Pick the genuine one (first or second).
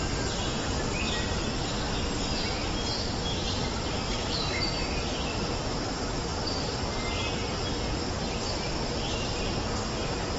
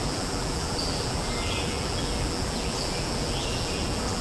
first